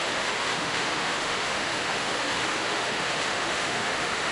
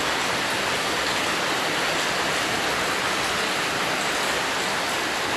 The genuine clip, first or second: second